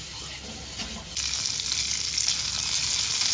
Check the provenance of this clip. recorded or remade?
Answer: recorded